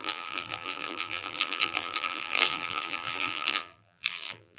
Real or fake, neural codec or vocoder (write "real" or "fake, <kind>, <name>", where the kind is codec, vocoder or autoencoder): fake, vocoder, BigVGAN v2